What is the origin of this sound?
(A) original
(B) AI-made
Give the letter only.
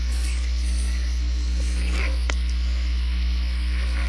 B